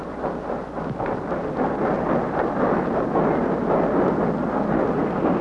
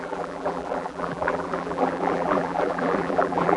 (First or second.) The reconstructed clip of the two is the second